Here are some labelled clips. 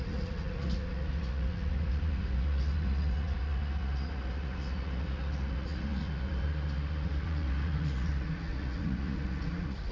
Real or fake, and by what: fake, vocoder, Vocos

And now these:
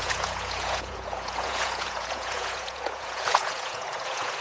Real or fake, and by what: fake, vocoder, Vocos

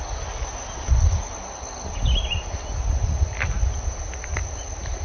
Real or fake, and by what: real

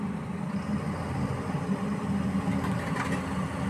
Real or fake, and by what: real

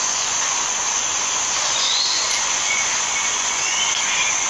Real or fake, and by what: fake, vocoder, Vocos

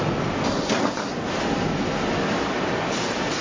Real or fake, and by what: real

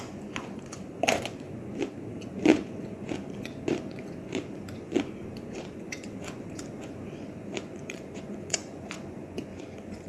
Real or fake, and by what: fake, vocoder, Vocos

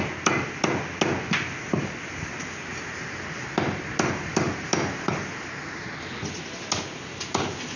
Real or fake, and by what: real